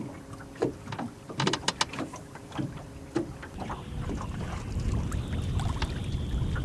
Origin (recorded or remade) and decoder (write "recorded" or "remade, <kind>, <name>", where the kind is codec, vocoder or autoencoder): recorded